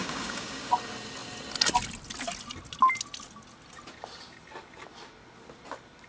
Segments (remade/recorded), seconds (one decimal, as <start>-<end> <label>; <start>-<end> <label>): 0.0-0.7 remade; 0.7-6.1 recorded